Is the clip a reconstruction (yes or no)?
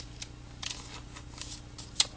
no